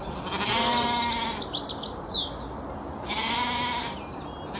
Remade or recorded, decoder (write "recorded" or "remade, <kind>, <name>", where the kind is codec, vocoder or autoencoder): recorded